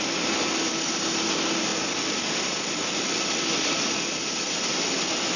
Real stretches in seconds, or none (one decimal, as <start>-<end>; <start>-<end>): 0.0-1.7; 4.5-5.4